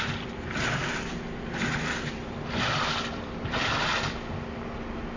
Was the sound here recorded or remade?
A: remade